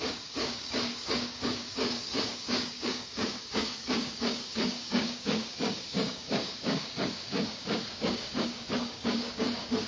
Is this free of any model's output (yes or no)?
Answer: no